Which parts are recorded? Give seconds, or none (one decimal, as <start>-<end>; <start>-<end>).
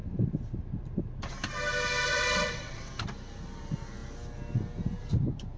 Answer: 0.0-2.1; 2.9-5.6